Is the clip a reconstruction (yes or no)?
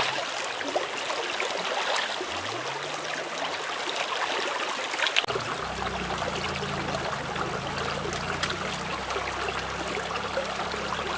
no